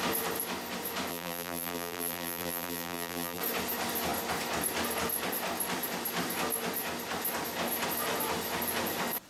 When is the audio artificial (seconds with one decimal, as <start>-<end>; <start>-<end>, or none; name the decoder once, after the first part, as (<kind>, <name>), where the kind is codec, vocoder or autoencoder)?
1.1-3.4 (vocoder, BigVGAN v2)